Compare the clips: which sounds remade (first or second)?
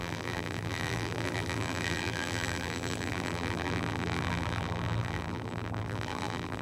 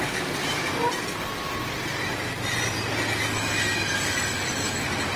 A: first